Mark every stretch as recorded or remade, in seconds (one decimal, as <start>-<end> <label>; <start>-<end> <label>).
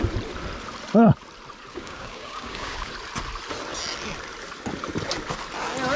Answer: 0.0-1.7 recorded; 1.7-2.9 remade; 2.9-6.0 recorded